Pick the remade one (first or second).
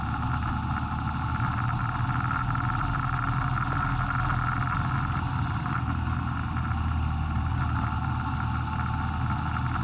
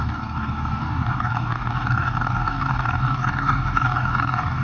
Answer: second